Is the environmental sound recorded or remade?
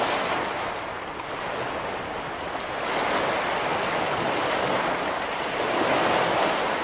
recorded